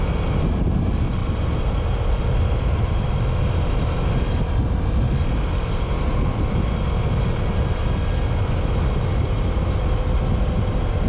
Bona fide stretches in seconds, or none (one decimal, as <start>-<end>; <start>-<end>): 0.0-11.1